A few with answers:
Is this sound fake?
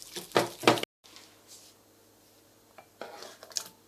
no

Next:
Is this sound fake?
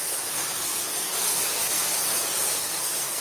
yes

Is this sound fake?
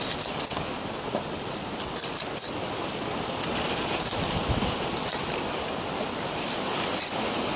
no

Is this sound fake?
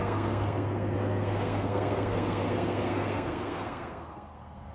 yes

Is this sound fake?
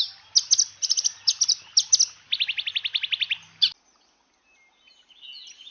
no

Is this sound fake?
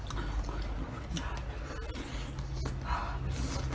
no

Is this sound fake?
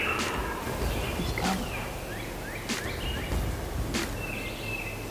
no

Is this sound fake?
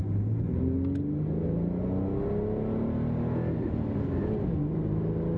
no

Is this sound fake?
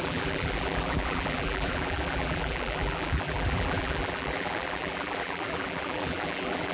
yes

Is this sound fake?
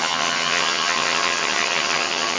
yes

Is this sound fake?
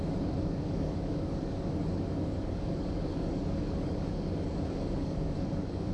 yes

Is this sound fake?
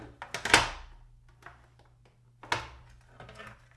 no